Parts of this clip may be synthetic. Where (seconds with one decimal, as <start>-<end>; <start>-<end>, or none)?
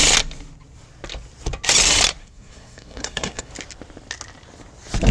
2.2-3.5